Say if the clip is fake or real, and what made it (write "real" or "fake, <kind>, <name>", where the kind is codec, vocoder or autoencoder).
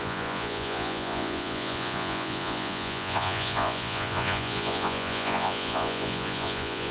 fake, vocoder, Vocos